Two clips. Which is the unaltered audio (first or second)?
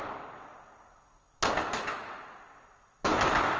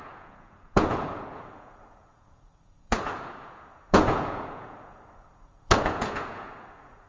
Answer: first